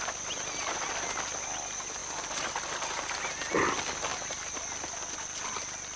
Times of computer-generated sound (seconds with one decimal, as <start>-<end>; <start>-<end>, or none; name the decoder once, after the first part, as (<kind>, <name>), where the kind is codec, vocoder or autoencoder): none